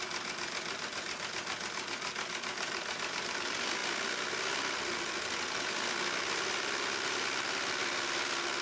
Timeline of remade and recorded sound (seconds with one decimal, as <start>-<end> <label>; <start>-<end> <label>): 0.0-8.6 recorded